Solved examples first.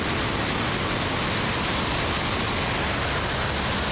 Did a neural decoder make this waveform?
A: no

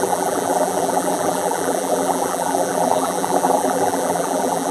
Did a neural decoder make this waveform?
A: yes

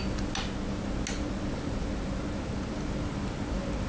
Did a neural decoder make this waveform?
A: no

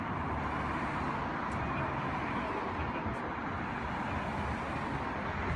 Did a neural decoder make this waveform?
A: no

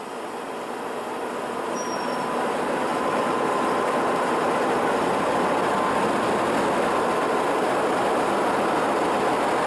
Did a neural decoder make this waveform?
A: no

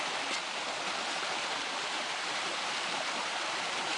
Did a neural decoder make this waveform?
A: yes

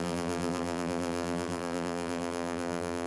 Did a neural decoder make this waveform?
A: yes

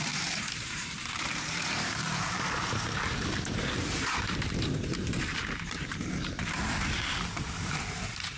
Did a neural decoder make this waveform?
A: yes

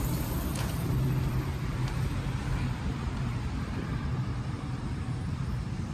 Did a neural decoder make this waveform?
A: yes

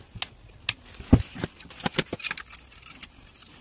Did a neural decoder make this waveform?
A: no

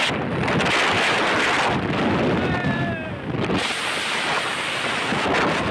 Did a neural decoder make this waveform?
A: yes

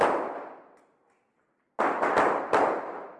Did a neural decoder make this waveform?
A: no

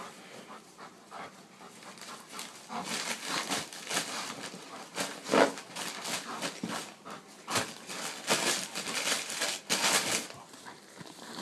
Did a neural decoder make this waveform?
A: no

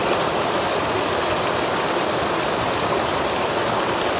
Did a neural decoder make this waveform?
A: yes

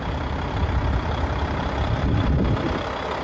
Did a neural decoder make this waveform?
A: yes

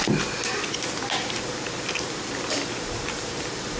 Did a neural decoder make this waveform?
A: no